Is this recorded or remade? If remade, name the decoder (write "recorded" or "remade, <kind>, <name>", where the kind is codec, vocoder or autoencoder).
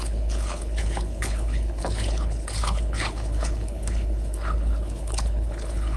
remade, codec, HILCodec